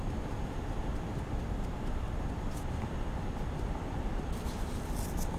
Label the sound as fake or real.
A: real